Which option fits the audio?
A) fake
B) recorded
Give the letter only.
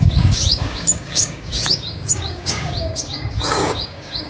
A